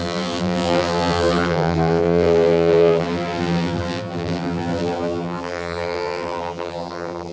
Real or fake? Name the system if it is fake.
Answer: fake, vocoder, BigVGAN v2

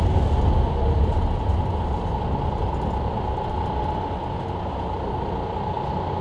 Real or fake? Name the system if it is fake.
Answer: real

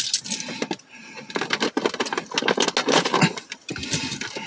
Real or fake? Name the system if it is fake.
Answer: real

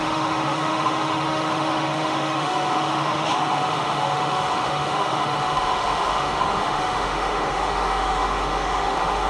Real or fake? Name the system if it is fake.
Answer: fake, autoencoder, DAC-VAE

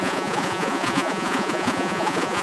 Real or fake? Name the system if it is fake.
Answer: fake, vocoder, Vocos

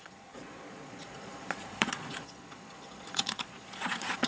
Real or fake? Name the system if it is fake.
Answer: fake, vocoder, Vocos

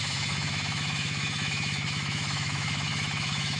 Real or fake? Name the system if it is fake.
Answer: fake, autoencoder, DAC-VAE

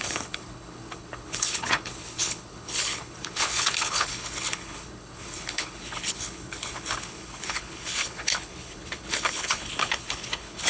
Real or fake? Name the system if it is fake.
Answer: fake, codec, HILCodec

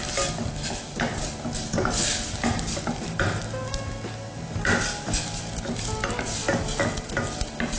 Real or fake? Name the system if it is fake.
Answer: real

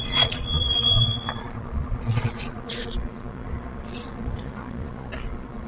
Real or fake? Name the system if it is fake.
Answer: fake, vocoder, Vocos